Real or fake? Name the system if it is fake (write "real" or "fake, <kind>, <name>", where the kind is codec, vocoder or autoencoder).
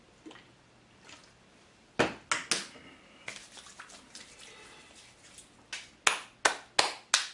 real